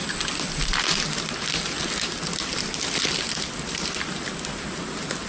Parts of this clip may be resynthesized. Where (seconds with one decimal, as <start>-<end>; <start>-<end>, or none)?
none